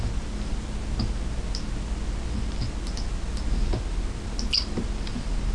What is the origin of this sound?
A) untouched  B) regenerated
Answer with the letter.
A